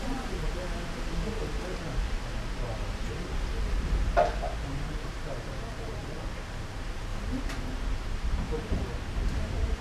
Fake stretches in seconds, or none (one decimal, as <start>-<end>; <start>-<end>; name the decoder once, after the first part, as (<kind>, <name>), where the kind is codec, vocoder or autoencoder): 0.0-1.4 (vocoder, BigVGAN v2); 3.1-7.1; 8.0-9.8